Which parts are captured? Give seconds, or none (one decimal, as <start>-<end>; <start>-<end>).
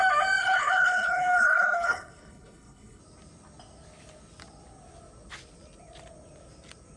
0.0-0.4; 3.0-7.0